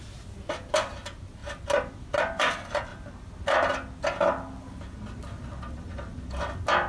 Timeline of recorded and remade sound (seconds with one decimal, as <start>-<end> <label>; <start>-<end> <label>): 0.0-6.9 recorded